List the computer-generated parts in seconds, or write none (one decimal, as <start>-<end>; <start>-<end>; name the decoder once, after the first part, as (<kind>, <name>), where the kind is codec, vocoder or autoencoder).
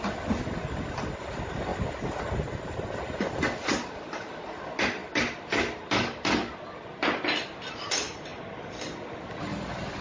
none